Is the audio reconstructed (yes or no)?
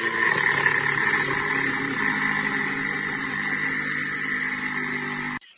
no